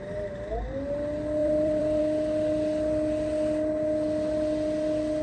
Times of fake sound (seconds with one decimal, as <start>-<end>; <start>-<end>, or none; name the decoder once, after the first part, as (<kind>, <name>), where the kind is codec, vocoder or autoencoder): 1.4-2.0 (vocoder, BigVGAN v2)